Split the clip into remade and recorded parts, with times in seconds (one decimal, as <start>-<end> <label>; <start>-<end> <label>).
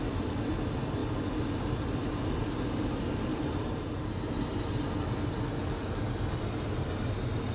0.0-3.3 recorded; 3.3-4.3 remade; 4.3-7.5 recorded